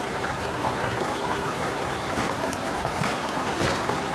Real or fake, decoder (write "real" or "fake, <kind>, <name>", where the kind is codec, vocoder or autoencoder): fake, codec, SNAC